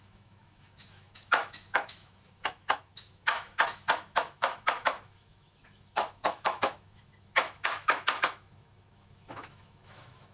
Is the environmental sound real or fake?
fake